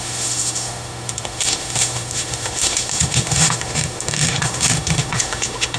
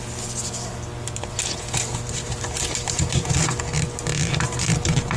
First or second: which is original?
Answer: second